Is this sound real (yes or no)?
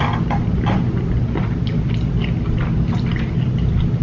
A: yes